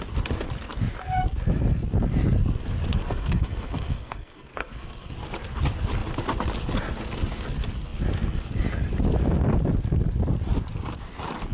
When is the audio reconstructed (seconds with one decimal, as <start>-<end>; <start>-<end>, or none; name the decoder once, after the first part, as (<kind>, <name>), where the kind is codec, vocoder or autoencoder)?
2.9-5.1 (codec, SNAC)